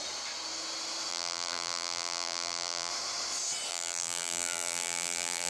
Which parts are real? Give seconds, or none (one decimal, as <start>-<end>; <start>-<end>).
0.0-1.1; 2.9-3.7